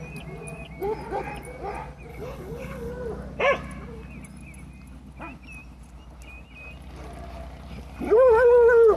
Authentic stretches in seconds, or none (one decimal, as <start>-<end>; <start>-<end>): 0.0-2.1; 2.9-9.0

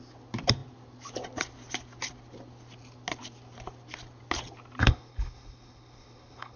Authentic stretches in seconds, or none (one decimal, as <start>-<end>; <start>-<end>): 0.0-4.8

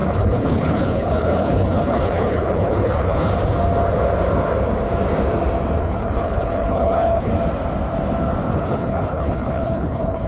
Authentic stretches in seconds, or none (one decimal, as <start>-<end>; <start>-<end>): 3.3-5.8; 7.3-8.5

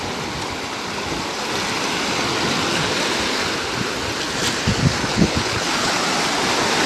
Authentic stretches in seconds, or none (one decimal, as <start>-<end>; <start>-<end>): 0.0-5.1; 5.9-6.9

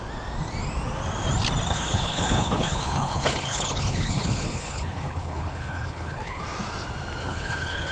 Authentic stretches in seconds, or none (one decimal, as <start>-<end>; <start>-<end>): 0.0-1.7; 6.4-7.2

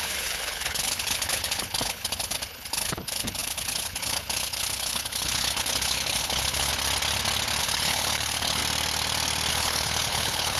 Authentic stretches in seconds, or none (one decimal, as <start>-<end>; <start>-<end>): 6.7-7.6; 8.6-9.5

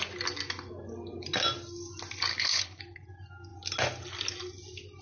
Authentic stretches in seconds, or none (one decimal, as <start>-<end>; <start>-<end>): 0.0-2.3; 2.8-5.0